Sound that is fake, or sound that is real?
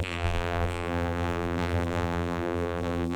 fake